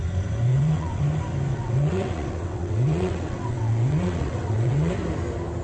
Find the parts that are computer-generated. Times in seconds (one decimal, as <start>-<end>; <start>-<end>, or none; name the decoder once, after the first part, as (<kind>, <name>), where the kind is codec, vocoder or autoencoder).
0.5-1.0 (vocoder, WaveNeXt); 1.5-4.9